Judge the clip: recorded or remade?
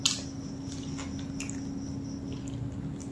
recorded